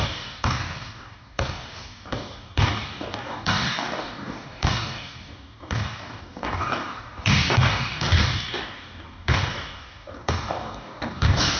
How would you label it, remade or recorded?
remade